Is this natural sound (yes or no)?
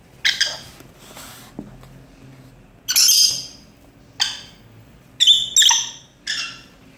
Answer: yes